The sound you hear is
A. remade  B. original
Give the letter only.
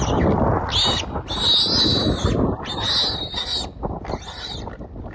B